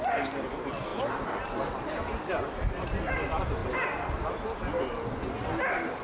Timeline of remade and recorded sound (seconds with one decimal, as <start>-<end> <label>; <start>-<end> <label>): 0.0-6.0 recorded